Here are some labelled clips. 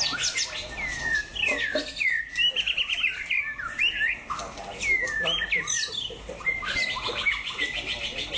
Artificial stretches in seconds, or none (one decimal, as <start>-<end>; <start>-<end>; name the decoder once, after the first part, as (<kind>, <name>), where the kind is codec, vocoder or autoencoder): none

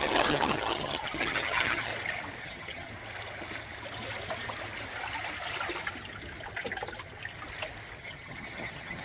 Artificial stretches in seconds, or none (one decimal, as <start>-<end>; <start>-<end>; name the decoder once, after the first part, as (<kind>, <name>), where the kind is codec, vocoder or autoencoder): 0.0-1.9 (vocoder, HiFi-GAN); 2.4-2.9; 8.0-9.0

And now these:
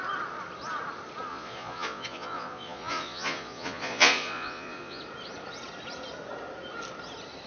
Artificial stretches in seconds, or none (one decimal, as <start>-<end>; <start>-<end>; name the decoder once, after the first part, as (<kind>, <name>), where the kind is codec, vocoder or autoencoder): 1.3-5.0 (vocoder, Vocos)

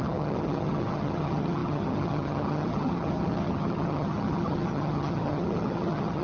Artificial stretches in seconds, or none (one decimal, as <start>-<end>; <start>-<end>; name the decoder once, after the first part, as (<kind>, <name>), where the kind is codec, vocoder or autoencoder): 0.0-6.2 (vocoder, HiFi-GAN)